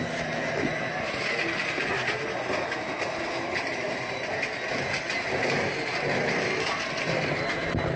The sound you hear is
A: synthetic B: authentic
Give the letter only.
B